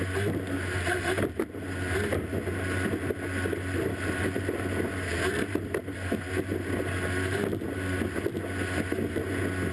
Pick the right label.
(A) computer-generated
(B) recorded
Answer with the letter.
B